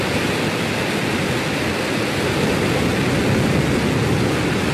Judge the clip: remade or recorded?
recorded